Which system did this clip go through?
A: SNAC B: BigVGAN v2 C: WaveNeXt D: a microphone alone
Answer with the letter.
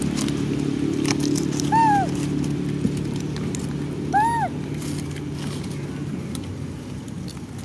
D